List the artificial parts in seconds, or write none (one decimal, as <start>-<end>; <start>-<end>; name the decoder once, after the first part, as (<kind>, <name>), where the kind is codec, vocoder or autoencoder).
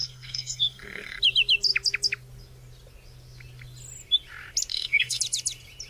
0.0-1.2 (codec, SNAC); 4.7-5.2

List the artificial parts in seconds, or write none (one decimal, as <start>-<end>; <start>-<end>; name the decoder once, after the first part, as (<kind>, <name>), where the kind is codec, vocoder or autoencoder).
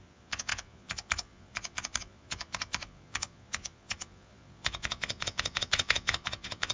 0.0-6.7 (vocoder, Vocos)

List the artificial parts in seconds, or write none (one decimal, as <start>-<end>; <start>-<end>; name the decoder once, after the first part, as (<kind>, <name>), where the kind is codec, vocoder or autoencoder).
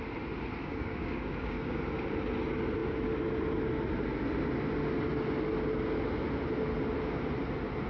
0.6-1.8 (codec, DAC)